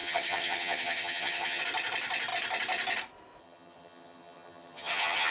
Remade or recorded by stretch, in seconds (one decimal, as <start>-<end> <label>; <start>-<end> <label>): 0.0-1.6 remade; 1.6-3.4 recorded; 3.4-5.3 remade

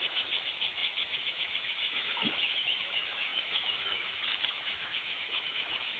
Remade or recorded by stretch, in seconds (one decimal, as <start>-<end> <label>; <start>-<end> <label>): 0.0-6.0 remade

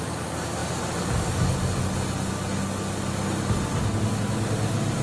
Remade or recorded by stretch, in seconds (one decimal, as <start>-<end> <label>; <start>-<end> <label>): 0.0-5.0 recorded

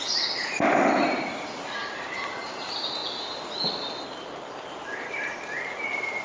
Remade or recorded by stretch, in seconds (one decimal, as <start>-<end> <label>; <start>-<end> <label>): 0.0-1.8 remade; 1.8-2.4 recorded; 2.4-3.0 remade; 3.0-4.8 recorded; 4.8-6.2 remade

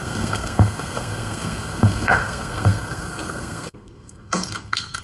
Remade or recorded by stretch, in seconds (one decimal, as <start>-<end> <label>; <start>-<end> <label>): 0.0-5.0 remade

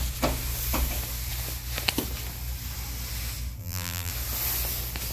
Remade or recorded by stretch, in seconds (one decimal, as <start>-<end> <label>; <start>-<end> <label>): 0.0-3.6 recorded; 3.6-4.1 remade; 4.1-5.1 recorded

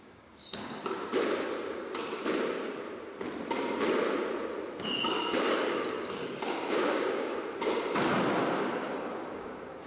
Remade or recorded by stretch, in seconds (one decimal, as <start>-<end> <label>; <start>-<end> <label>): 0.0-1.1 remade; 1.1-5.5 recorded; 5.5-7.3 remade; 7.3-8.7 recorded; 8.7-9.9 remade

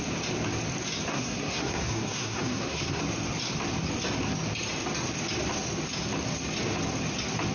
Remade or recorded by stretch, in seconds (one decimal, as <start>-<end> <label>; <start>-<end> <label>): 0.0-1.1 recorded; 1.1-3.0 remade; 3.0-7.5 recorded